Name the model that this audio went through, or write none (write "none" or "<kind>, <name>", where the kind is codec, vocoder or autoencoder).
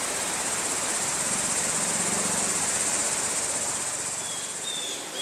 vocoder, BigVGAN v2